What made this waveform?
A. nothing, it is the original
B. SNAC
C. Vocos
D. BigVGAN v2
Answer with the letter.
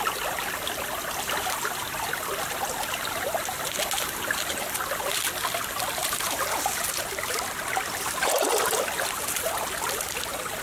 A